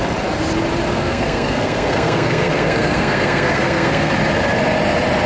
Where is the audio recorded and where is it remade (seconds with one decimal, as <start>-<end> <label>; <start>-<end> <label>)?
0.0-0.9 recorded; 0.9-4.1 remade; 4.1-5.3 recorded